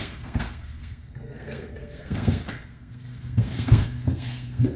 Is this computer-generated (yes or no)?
yes